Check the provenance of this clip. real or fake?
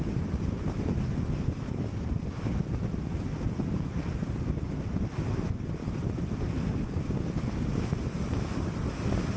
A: real